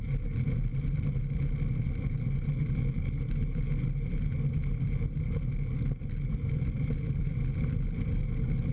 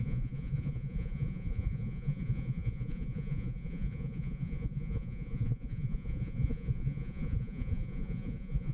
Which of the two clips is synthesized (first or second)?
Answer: second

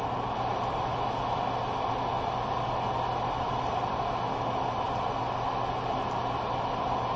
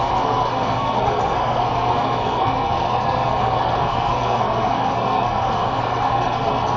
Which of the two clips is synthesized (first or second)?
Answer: second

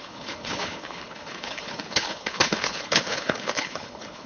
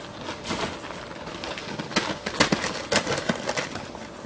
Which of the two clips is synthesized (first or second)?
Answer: first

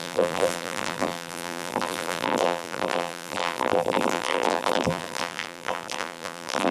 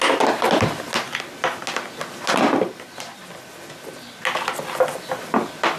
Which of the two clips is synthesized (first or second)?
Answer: first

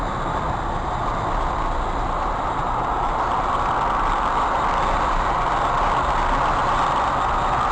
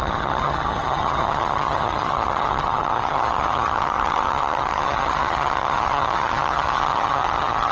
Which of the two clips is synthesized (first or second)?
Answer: second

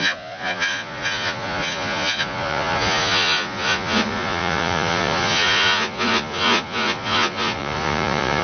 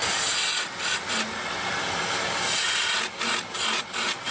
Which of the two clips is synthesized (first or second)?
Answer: first